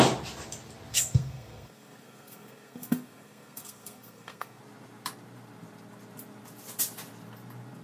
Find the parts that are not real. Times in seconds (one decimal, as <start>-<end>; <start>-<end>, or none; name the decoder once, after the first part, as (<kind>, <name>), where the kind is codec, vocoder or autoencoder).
0.9-4.6 (codec, SNAC)